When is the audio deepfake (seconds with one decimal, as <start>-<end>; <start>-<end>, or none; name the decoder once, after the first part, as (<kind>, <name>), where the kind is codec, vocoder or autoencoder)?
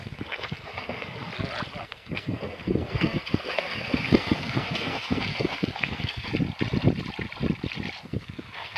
0.0-1.3 (codec, SNAC); 1.8-6.3; 8.0-8.8